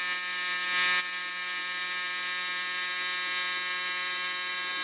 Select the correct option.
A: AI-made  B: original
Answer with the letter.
B